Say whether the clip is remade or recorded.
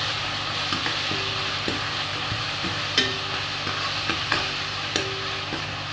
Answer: recorded